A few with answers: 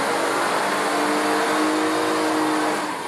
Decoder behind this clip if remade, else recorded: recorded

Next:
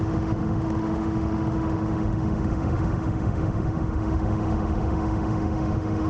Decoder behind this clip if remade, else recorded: remade, autoencoder, DAC-VAE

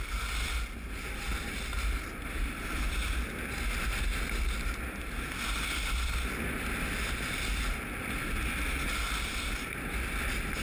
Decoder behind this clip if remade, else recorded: recorded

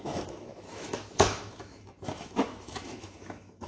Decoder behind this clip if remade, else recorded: remade, autoencoder, DAC-VAE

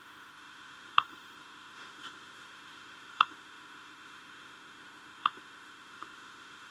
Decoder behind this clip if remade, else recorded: remade, autoencoder, DAC-VAE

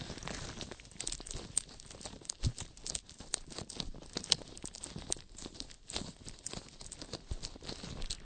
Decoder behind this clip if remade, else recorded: recorded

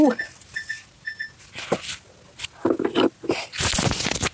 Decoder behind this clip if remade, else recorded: recorded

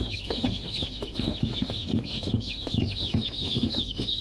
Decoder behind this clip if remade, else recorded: remade, autoencoder, DAC-VAE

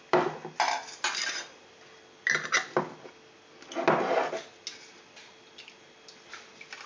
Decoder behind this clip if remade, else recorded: recorded